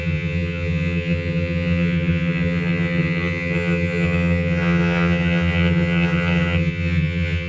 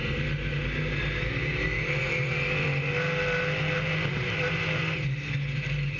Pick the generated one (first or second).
first